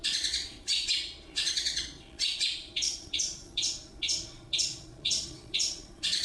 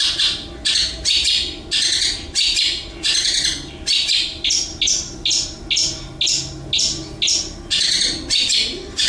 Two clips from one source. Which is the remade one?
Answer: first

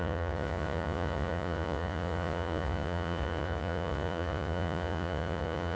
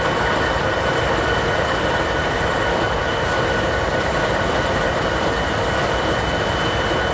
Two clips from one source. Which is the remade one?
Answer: first